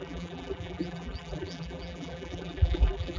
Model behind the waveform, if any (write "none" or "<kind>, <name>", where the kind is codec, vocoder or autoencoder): vocoder, BigVGAN v2